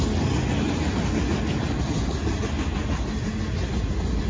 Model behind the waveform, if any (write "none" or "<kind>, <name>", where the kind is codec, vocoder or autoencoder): none